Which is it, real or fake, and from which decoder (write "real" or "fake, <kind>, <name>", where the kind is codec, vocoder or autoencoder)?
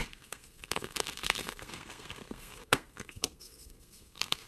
fake, codec, SNAC